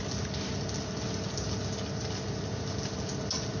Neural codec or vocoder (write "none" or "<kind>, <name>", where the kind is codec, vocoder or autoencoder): none